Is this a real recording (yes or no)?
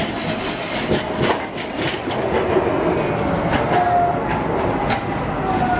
yes